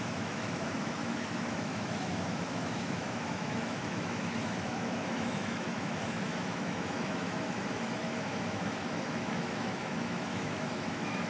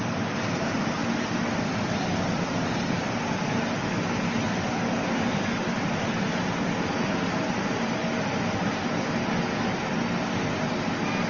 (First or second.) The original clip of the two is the second